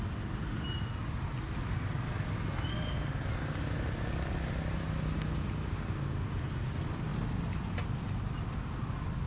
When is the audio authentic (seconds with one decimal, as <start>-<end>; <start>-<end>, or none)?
0.0-9.3